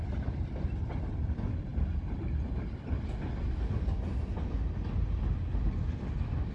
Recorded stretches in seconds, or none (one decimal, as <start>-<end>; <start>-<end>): 0.0-6.5